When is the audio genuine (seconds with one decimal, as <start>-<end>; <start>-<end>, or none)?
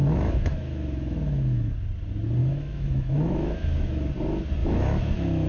1.7-2.4; 4.1-4.6